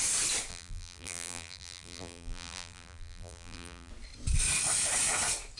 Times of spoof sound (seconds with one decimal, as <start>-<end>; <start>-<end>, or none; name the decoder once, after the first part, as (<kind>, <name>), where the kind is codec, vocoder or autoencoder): 0.5-3.9 (vocoder, BigVGAN v2)